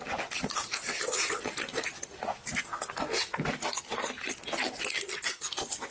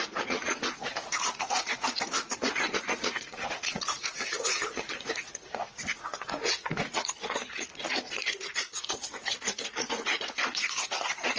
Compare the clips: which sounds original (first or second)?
first